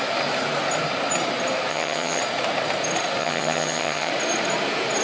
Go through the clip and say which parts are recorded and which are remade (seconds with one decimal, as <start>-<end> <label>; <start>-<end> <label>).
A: 0.0-1.7 recorded; 1.7-2.2 remade; 2.2-3.2 recorded; 3.2-4.1 remade; 4.1-5.0 recorded